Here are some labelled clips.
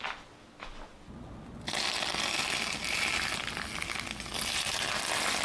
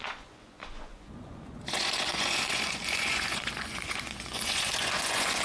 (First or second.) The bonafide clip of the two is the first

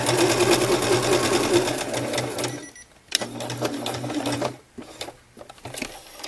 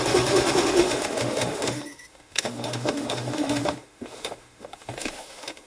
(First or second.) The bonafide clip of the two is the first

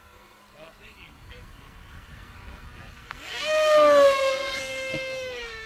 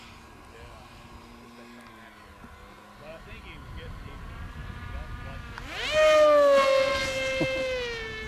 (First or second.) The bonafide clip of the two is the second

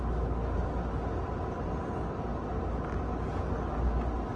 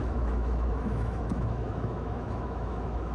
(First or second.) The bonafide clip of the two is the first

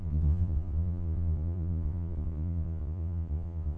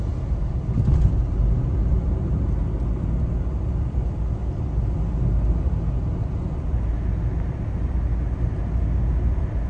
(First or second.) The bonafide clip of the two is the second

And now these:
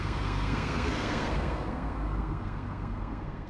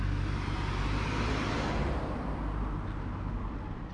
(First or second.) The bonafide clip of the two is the second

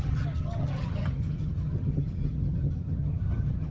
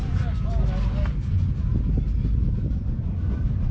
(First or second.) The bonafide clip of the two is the second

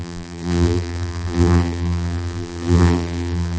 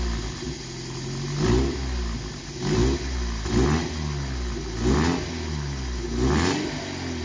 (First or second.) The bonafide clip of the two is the second